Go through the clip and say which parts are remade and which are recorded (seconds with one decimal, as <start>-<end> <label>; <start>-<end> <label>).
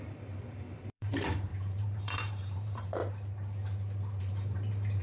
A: 0.0-3.0 remade; 3.0-4.2 recorded; 4.2-5.0 remade